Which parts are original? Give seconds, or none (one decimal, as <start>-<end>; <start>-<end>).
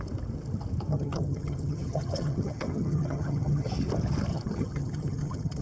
0.0-0.9; 3.7-4.3